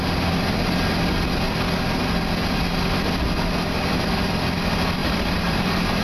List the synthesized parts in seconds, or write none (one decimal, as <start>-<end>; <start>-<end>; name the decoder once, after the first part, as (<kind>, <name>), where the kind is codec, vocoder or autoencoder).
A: 5.0-6.0 (vocoder, BigVGAN v2)